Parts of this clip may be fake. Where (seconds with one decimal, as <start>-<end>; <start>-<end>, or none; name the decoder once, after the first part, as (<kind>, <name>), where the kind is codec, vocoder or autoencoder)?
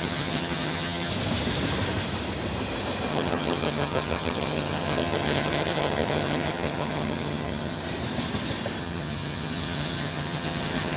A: 0.0-1.1 (vocoder, HiFi-GAN); 3.1-7.8; 8.8-11.0